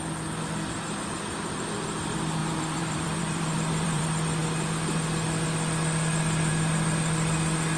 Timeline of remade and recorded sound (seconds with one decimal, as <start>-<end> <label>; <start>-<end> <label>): 0.0-2.4 recorded; 2.4-4.0 remade; 4.0-7.8 recorded

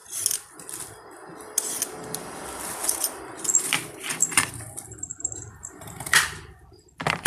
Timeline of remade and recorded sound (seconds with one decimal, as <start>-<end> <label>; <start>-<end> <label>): 0.0-2.8 recorded; 2.8-7.3 remade

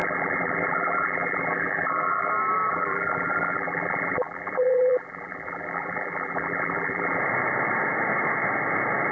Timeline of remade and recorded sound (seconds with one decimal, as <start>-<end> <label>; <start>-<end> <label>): 0.0-2.3 remade; 2.3-2.7 recorded; 2.7-7.2 remade; 7.2-9.1 recorded

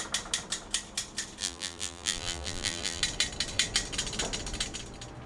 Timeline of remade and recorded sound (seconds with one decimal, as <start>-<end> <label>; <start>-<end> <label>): 0.0-1.4 recorded; 1.4-3.0 remade; 3.0-5.3 recorded

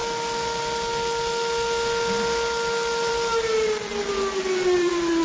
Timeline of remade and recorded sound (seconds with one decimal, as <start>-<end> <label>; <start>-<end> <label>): 0.0-3.1 recorded; 3.1-5.2 remade

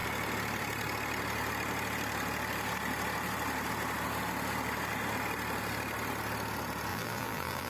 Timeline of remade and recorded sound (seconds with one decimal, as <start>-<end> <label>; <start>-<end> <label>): 0.0-6.9 recorded; 6.9-7.7 remade